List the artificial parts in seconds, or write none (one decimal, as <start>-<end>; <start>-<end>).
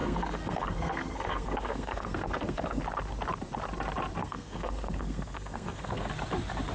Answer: 0.0-2.8; 4.2-6.1